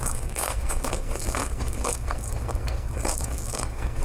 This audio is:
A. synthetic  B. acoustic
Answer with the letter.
A